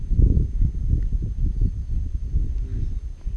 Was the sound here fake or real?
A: real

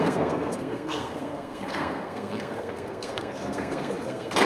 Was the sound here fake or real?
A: fake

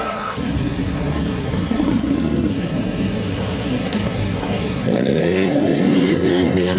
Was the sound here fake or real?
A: fake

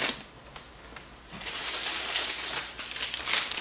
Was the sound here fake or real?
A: real